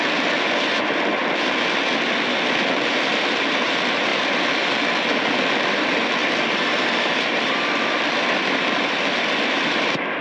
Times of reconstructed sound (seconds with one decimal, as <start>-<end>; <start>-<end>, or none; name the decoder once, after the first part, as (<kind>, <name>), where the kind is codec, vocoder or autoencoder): 4.1-4.9 (vocoder, BigVGAN v2); 6.2-9.3